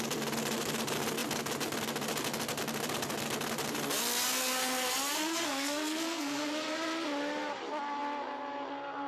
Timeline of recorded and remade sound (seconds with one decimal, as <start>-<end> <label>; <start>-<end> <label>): 0.0-5.1 recorded; 5.1-6.5 remade; 6.5-9.1 recorded